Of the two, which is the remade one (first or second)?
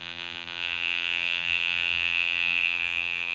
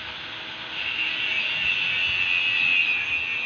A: first